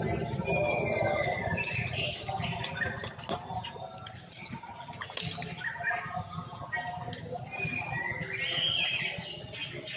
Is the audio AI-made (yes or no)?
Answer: no